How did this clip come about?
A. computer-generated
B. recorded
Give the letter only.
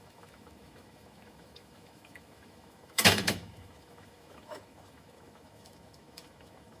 A